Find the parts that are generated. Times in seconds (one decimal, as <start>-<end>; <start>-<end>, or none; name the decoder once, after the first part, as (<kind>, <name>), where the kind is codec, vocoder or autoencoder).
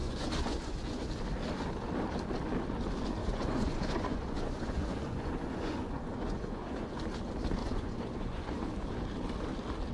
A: 0.0-1.0 (vocoder, Vocos); 3.2-7.0; 7.6-8.6